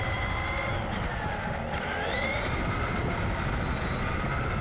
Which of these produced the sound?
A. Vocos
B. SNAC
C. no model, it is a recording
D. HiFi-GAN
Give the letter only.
C